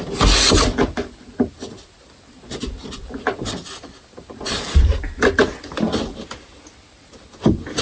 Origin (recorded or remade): recorded